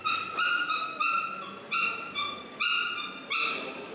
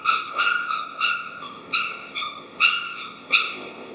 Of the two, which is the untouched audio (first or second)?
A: first